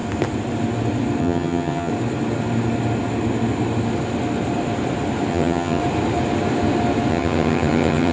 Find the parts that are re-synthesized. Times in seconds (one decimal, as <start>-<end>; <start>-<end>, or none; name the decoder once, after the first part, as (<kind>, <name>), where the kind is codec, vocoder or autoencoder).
1.2-1.9 (vocoder, HiFi-GAN); 5.3-5.8; 7.1-8.1